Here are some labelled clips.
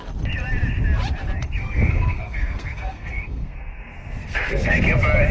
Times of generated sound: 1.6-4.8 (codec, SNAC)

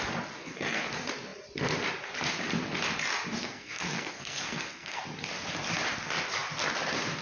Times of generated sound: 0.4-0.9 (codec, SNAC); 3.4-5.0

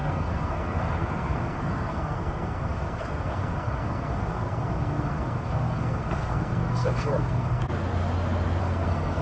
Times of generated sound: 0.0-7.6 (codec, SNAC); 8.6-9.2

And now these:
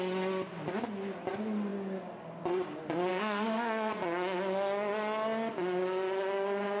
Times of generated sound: 3.1-3.9 (codec, SNAC)

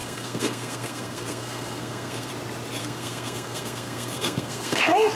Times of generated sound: 0.0-2.3 (codec, SNAC); 2.8-5.1

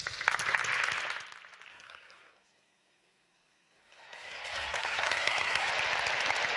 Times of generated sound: 1.7-5.7 (codec, SNAC)

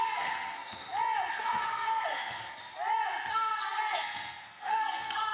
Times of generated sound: 0.0-0.7 (codec, SNAC); 1.3-2.6; 3.3-5.3

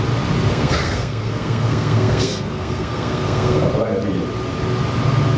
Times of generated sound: 0.5-3.7 (codec, SNAC)